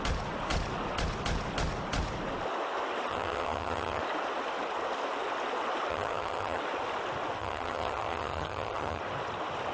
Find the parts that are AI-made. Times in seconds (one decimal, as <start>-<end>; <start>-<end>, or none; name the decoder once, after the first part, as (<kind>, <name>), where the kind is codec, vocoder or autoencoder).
3.1-4.0 (vocoder, HiFi-GAN); 5.9-6.6; 7.4-9.0